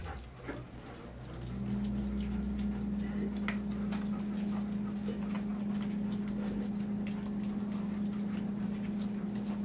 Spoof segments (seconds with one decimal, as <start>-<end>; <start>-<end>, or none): none